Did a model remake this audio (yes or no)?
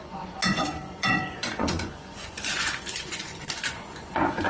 yes